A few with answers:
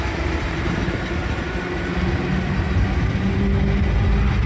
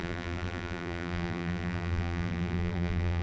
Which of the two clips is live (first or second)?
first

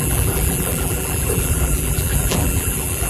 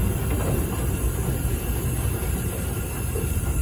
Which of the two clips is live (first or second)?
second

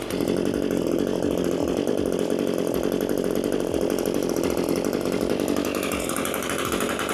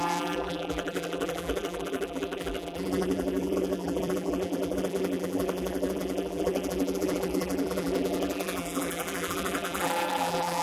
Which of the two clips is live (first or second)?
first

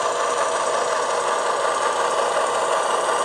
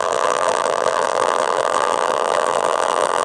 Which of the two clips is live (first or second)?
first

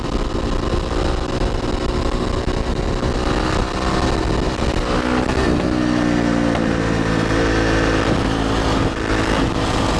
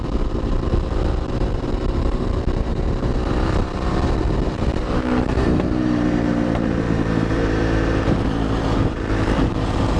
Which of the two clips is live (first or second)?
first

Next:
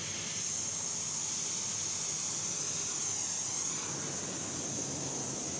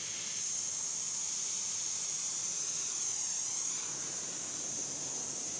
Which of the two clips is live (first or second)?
first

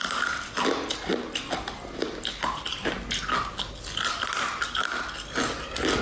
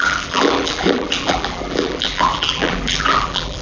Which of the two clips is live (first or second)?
first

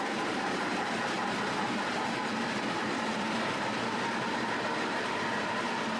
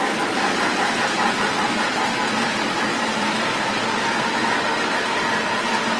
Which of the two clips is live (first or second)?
second